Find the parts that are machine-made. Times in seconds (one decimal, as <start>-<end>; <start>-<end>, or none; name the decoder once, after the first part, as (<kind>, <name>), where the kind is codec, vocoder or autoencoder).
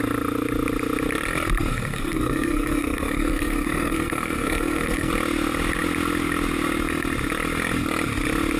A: 1.7-5.1 (codec, SNAC)